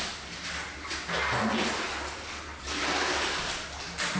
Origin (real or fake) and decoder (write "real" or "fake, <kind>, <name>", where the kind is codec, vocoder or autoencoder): real